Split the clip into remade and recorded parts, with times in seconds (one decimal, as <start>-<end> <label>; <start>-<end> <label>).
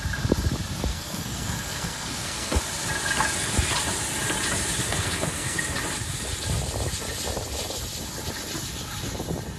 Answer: 0.0-0.9 recorded; 0.9-2.6 remade; 2.6-4.8 recorded; 4.8-5.6 remade; 5.6-9.6 recorded